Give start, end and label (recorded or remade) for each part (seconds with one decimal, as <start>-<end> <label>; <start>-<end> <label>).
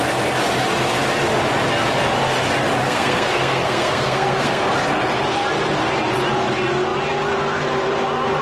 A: 0.0-2.8 recorded; 2.8-4.6 remade; 4.6-8.4 recorded